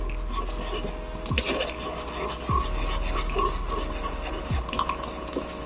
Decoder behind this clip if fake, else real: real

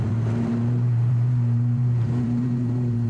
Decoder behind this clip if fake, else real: fake, vocoder, BigVGAN v2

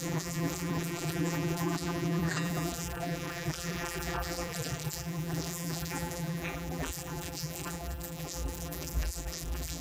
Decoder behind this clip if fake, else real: fake, vocoder, BigVGAN v2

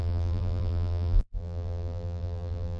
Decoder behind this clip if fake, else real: fake, vocoder, BigVGAN v2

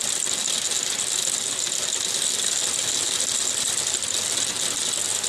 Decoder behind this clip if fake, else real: real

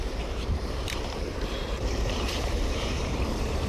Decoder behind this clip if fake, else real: fake, vocoder, BigVGAN v2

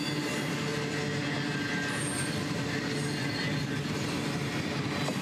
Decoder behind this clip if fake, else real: real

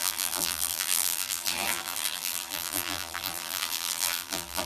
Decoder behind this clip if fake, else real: fake, vocoder, BigVGAN v2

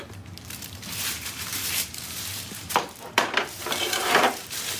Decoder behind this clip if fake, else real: fake, vocoder, BigVGAN v2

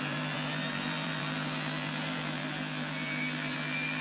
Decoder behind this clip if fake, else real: fake, vocoder, BigVGAN v2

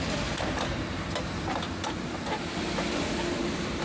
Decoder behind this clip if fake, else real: fake, vocoder, BigVGAN v2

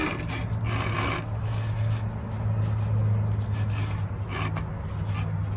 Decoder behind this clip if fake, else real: real